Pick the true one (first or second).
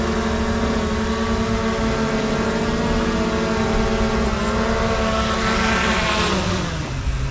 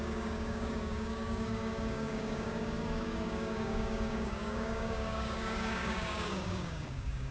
first